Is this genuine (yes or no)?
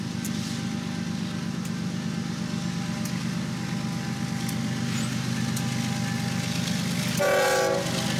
yes